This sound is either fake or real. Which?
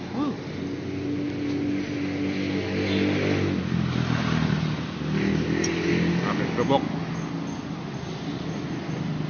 real